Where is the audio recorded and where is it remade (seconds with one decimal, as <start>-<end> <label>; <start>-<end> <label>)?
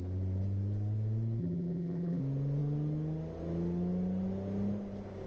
0.0-1.4 recorded; 1.4-2.2 remade; 2.2-5.3 recorded